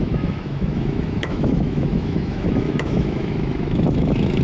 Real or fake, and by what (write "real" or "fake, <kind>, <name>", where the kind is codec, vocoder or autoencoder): fake, autoencoder, DAC-VAE